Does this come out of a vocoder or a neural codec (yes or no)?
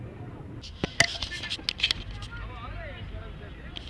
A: no